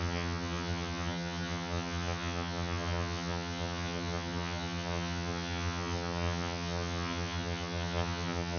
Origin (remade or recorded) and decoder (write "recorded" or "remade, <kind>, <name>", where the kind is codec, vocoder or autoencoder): remade, vocoder, HiFi-GAN